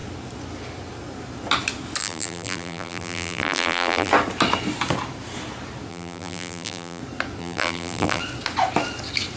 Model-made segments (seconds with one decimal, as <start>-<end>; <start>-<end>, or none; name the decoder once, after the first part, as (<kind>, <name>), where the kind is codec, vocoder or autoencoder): 2.0-4.1 (vocoder, BigVGAN v2); 5.9-7.0; 7.4-8.2